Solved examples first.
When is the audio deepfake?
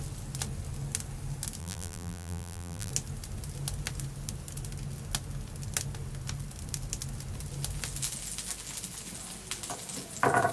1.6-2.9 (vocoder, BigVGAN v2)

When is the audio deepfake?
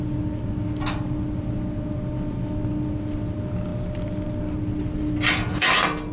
none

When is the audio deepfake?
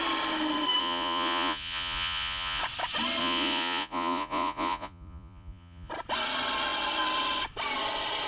0.8-2.6 (vocoder, Vocos); 3.2-5.9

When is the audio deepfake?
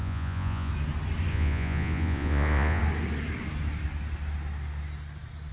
0.0-0.7 (vocoder, Vocos); 1.3-2.8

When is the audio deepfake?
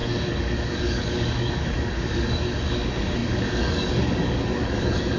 0.0-5.2 (codec, DAC)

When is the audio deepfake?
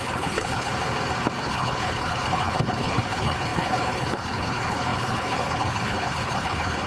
0.0-0.7 (codec, HILCodec); 1.4-6.9